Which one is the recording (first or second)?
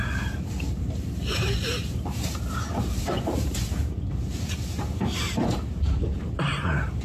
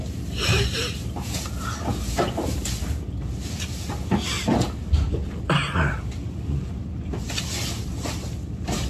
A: second